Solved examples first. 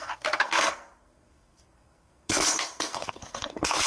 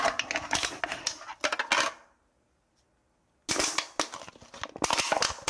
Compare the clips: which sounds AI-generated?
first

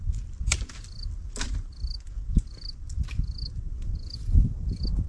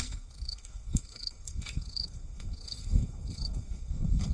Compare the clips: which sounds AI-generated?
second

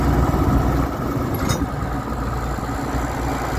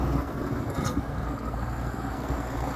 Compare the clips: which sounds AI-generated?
second